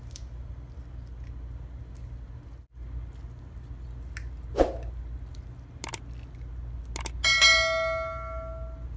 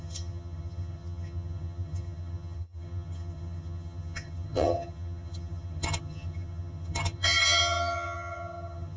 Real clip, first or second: first